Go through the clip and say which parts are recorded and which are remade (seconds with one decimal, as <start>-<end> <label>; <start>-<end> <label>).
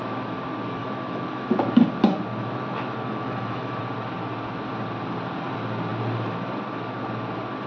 0.0-0.8 recorded; 0.8-1.3 remade; 1.3-2.3 recorded; 2.3-3.8 remade; 3.8-7.7 recorded